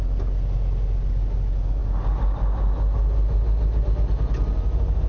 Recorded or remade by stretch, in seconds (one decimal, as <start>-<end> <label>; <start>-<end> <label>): 0.0-5.1 recorded